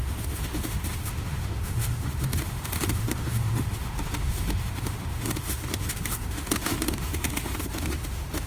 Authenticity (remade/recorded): remade